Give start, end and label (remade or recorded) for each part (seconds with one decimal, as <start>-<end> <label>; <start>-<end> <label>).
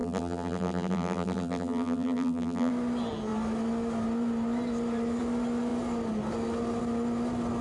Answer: 0.0-2.7 remade; 2.7-7.6 recorded